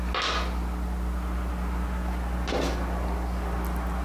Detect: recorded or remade recorded